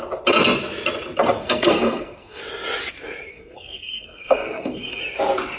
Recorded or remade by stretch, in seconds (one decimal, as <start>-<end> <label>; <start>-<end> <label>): 0.0-1.4 recorded; 1.4-2.4 remade; 2.4-3.3 recorded; 3.3-5.0 remade; 5.0-5.6 recorded